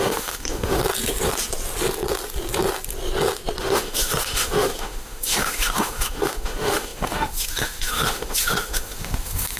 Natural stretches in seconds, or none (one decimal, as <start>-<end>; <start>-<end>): 0.8-3.6